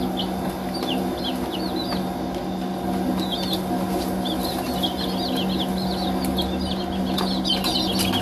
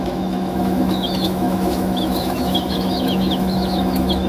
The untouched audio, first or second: first